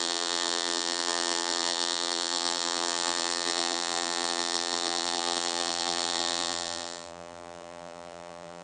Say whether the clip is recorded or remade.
remade